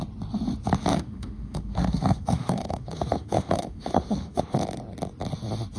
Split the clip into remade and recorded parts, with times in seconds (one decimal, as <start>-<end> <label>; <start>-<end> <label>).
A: 0.0-0.9 recorded; 0.9-4.4 remade; 4.4-5.8 recorded